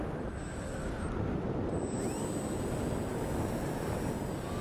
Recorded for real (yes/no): yes